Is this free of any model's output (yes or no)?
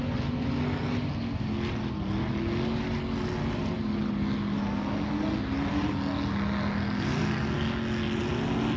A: yes